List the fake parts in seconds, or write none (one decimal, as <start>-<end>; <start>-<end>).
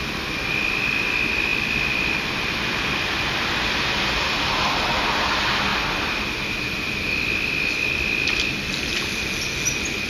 1.5-2.8; 5.7-8.3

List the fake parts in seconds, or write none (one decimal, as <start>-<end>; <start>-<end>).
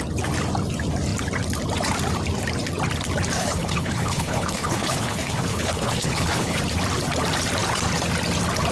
3.4-6.6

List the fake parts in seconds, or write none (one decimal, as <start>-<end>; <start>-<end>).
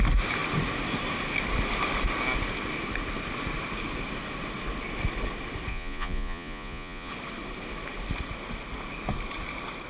5.7-7.1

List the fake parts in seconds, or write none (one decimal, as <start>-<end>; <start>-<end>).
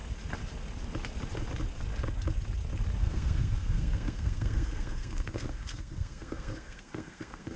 3.0-7.6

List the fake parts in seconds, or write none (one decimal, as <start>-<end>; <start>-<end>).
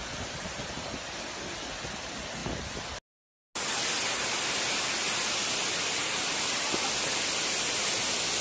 none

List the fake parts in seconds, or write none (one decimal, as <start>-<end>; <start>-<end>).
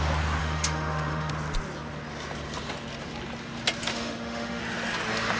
0.4-1.3; 3.9-4.6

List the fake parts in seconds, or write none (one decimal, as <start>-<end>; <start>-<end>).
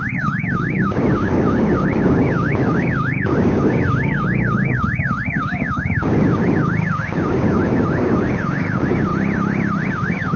0.0-9.1; 9.9-10.4